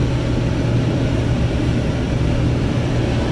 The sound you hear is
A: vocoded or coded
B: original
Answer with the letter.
B